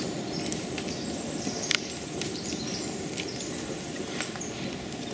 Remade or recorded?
recorded